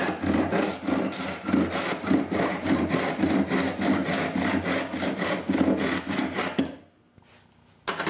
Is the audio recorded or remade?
recorded